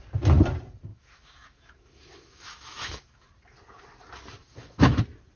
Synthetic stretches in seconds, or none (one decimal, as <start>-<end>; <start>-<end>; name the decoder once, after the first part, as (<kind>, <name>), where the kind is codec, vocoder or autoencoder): 0.9-3.3 (autoencoder, DAC-VAE); 4.4-5.0